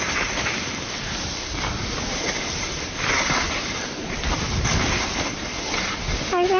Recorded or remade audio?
recorded